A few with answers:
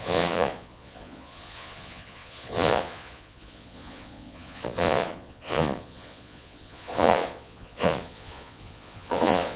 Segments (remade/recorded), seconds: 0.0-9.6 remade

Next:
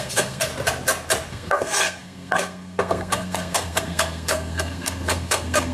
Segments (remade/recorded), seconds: 0.0-0.5 remade; 0.5-1.3 recorded; 1.3-5.7 remade

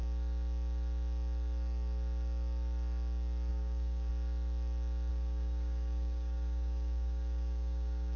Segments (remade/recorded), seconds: 0.0-3.5 recorded; 3.5-4.1 remade; 4.1-5.1 recorded; 5.1-8.2 remade